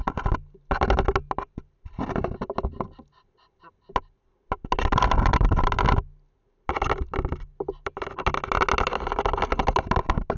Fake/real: real